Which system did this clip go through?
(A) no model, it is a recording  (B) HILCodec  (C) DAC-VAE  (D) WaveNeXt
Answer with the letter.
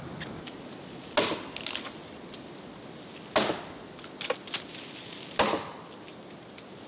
A